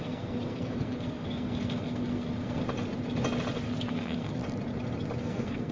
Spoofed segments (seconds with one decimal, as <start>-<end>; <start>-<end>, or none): 0.0-2.6; 3.9-4.4; 5.2-5.7